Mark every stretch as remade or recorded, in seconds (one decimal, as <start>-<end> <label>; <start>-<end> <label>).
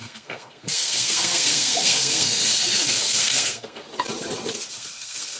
0.0-3.9 remade; 3.9-4.7 recorded; 4.7-5.4 remade